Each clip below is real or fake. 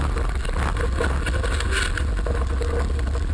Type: real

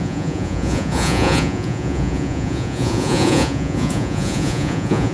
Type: fake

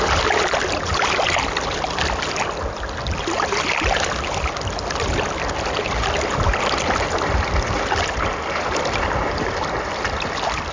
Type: real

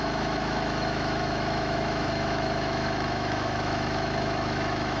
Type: fake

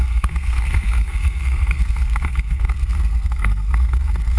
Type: fake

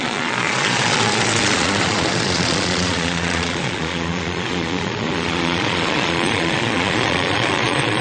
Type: fake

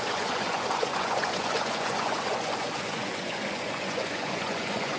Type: fake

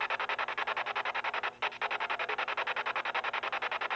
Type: real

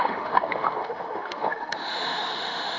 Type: fake